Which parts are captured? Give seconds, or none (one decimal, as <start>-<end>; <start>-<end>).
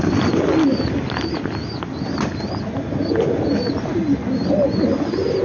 0.0-5.4